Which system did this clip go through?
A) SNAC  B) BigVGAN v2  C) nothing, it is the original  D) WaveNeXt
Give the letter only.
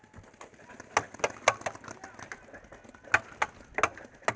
C